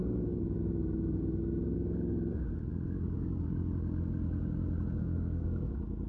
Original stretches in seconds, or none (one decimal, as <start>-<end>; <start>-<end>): 0.0-5.0; 5.5-6.1